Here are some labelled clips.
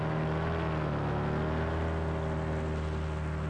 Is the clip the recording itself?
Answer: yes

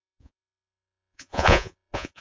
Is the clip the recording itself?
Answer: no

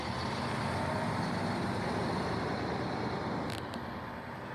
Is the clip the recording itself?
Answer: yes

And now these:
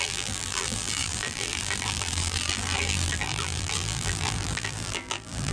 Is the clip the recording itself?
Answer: no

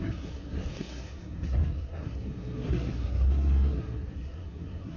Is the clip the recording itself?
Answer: no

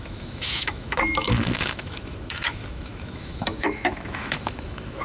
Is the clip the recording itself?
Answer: no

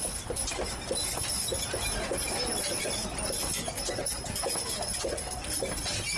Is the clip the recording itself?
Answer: yes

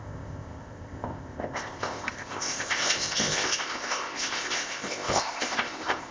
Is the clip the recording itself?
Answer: no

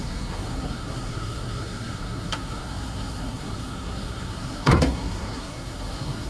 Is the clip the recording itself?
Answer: no